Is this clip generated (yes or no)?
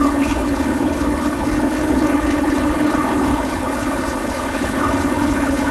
yes